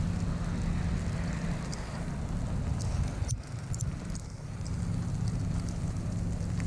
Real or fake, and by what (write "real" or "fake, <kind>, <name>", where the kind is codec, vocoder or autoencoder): real